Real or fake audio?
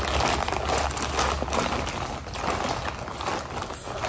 real